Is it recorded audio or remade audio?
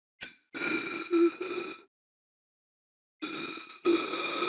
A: recorded